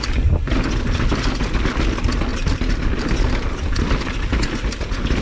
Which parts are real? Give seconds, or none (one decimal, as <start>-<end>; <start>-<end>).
0.0-5.2